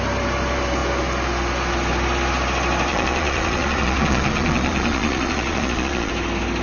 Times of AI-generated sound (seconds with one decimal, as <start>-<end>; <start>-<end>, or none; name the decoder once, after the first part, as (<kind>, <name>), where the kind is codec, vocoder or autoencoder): 2.9-6.1 (vocoder, Vocos)